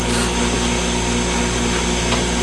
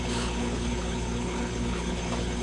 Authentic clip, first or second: first